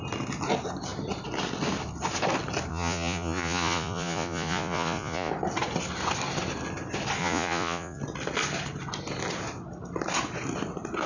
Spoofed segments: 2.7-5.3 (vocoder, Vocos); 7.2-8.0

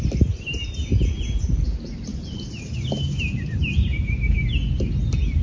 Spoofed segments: none

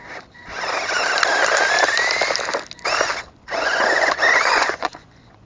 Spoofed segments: 3.3-5.5 (vocoder, Vocos)